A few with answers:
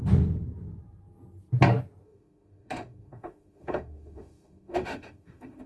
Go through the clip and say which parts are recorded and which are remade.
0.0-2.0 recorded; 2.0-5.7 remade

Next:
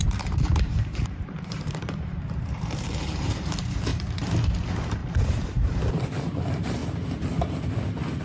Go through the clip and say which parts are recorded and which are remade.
0.0-3.9 remade; 3.9-4.5 recorded; 4.5-6.8 remade; 6.8-8.2 recorded

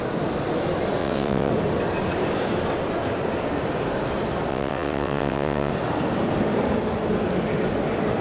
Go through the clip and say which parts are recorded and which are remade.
0.0-1.0 recorded; 1.0-1.5 remade; 1.5-4.5 recorded; 4.5-5.7 remade; 5.7-8.2 recorded

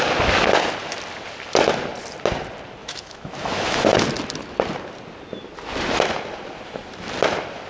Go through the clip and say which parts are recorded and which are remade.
0.0-2.8 recorded; 2.8-3.8 remade; 3.8-7.7 recorded

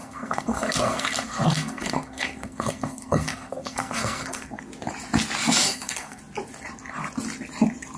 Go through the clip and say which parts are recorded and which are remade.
0.0-4.6 remade; 4.6-5.6 recorded; 5.6-6.2 remade; 6.2-8.0 recorded

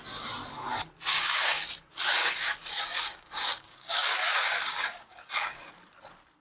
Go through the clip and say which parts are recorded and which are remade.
0.0-1.1 recorded; 1.1-1.7 remade; 1.7-2.2 recorded; 2.2-5.7 remade; 5.7-6.4 recorded